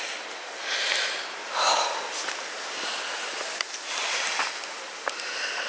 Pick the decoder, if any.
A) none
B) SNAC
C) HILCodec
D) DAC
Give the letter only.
A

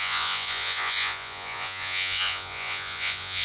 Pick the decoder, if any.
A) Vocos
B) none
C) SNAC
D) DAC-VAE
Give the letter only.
A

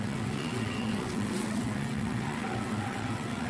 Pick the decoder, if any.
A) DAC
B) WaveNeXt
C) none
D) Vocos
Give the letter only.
B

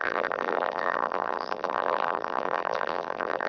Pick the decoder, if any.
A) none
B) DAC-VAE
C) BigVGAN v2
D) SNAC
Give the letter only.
C